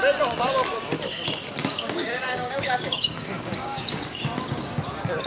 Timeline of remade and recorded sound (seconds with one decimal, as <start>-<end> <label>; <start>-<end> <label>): 0.0-1.6 recorded; 1.6-4.8 remade; 4.8-5.3 recorded